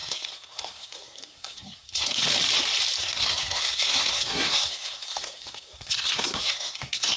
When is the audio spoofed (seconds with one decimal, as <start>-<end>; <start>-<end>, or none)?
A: 0.0-2.2; 3.0-7.2